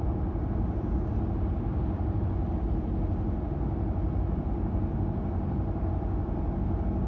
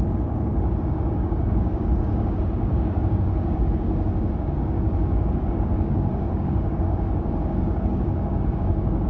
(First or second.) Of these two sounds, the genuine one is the first